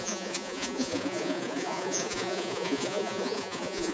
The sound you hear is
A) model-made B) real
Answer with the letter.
A